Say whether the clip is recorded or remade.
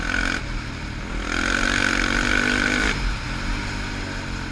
recorded